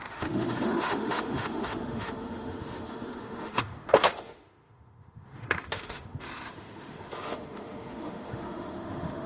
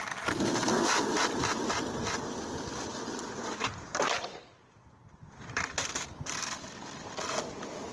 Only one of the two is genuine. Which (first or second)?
second